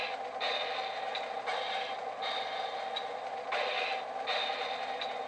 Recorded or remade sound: recorded